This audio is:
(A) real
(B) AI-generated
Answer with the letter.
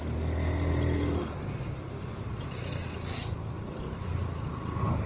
A